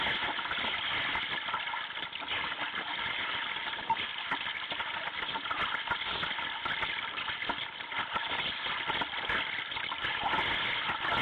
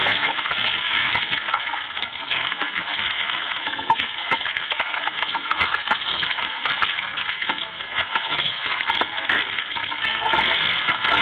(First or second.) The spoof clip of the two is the second